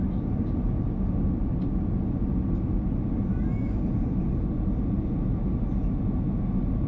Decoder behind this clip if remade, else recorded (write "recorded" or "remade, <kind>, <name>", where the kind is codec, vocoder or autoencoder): recorded